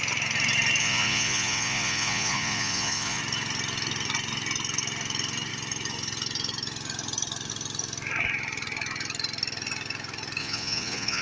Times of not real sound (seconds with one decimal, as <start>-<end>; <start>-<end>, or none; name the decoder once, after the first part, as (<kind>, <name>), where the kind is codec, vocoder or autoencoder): 0.8-3.2 (vocoder, Vocos); 10.4-11.2